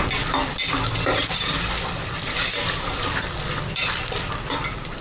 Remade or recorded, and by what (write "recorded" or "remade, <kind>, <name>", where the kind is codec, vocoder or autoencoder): remade, vocoder, BigVGAN v2